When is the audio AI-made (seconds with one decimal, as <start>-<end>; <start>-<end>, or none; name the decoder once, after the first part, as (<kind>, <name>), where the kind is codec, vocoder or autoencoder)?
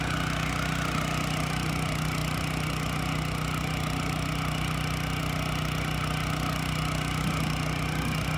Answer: none